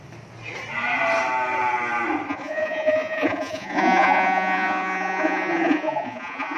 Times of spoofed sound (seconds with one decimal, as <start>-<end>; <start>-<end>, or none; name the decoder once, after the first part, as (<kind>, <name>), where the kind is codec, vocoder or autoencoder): 2.3-6.6 (vocoder, Vocos)

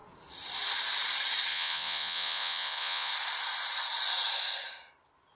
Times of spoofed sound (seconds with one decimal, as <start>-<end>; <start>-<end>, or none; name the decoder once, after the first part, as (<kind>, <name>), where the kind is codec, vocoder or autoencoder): 1.5-3.1 (vocoder, Vocos)